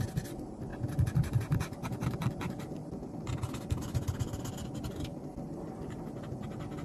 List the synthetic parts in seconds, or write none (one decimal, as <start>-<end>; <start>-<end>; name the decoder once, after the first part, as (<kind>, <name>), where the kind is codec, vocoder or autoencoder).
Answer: none